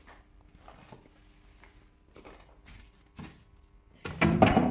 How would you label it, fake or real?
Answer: real